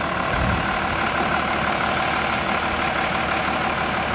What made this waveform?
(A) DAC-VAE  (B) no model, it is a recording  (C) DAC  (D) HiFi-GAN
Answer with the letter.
B